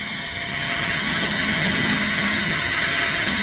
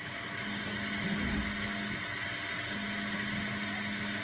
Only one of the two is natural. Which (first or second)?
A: second